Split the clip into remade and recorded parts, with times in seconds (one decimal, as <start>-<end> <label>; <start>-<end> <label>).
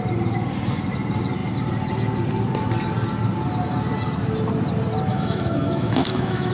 0.0-5.1 recorded; 5.1-6.5 remade